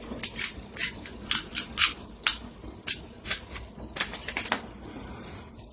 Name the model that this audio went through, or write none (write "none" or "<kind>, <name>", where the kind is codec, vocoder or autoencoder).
none